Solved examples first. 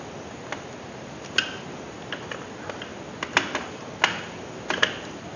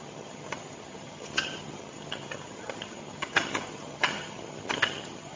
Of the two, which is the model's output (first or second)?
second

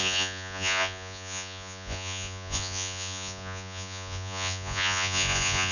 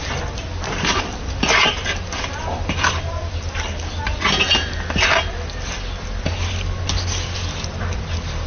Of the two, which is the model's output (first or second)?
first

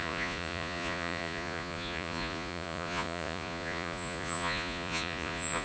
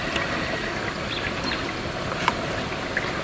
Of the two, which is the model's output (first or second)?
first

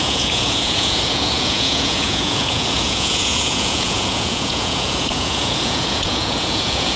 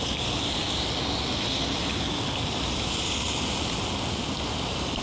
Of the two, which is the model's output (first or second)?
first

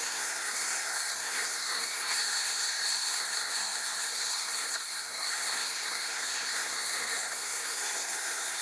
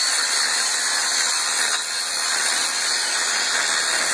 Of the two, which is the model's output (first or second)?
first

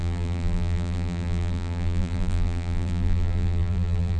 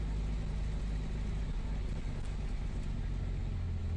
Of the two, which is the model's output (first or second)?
first